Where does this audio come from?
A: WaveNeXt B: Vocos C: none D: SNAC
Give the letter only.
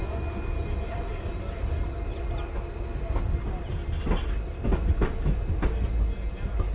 C